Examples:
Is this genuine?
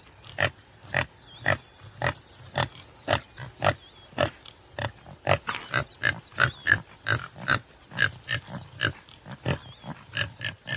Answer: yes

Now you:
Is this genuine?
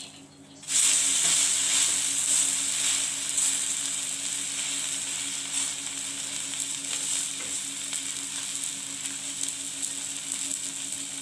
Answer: yes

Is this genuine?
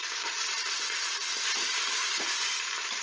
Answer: no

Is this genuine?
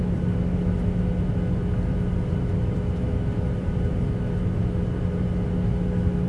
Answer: yes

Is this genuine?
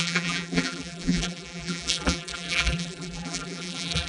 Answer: no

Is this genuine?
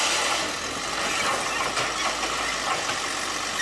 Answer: yes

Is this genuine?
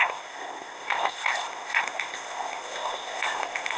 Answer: no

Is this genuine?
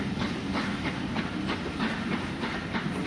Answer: yes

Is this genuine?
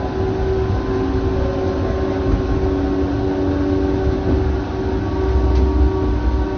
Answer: yes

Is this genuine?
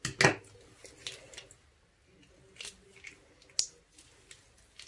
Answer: yes